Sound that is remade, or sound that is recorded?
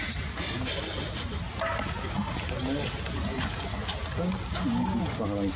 recorded